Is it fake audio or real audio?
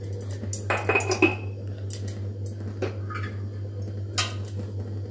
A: real